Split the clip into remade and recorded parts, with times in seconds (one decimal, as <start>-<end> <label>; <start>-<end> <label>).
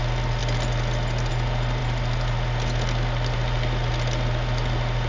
0.0-5.1 recorded